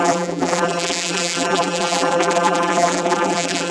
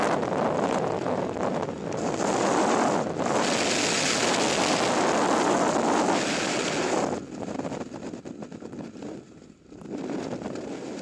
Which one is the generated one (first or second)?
first